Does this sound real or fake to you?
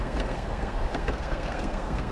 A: fake